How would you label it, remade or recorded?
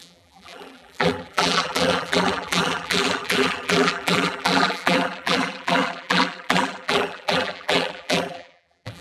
remade